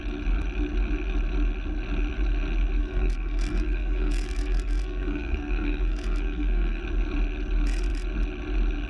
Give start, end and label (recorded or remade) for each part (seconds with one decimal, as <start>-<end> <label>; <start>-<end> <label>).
0.0-2.8 recorded; 2.8-6.8 remade; 6.8-8.9 recorded